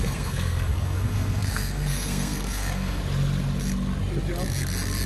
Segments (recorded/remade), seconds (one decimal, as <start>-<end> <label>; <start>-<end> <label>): 0.0-3.0 remade; 3.0-5.1 recorded